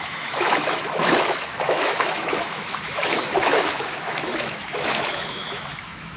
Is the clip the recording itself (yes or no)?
no